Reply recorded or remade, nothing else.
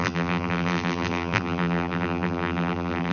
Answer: remade